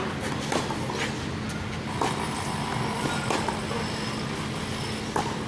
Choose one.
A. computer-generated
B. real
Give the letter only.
B